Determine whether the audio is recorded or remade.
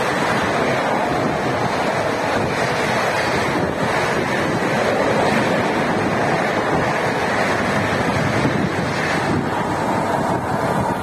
recorded